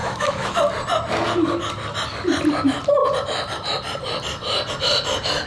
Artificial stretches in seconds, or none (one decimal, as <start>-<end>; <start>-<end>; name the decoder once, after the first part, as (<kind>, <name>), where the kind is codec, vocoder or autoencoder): 0.0-0.6 (autoencoder, DAC-VAE)